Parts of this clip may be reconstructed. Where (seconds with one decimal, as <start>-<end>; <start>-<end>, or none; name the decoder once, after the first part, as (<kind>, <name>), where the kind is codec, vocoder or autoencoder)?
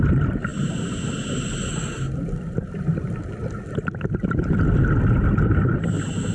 none